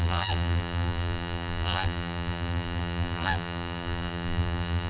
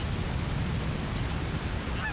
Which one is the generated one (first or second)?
first